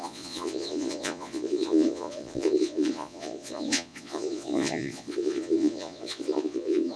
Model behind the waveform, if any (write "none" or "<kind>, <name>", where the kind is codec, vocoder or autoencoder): vocoder, Vocos